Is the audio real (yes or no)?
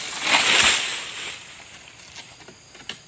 yes